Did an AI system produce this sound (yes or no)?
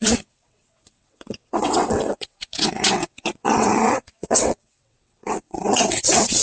yes